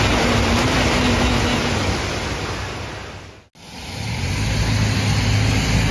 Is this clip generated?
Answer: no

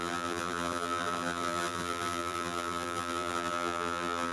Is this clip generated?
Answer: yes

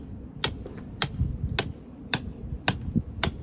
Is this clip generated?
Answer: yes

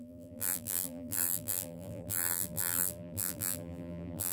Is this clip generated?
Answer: yes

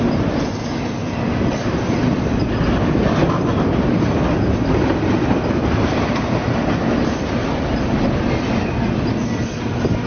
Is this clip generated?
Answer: no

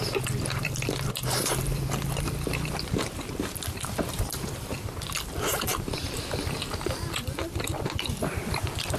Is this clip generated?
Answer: yes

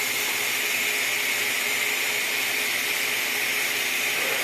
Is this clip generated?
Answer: yes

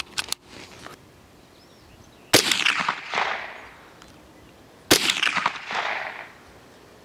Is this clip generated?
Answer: no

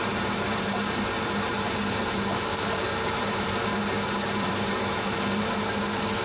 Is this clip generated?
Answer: yes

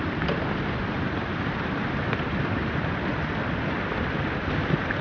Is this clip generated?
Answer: yes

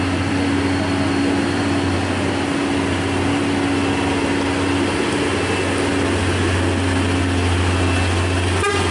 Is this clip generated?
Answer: no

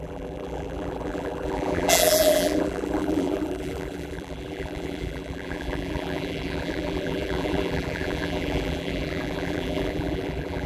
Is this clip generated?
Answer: yes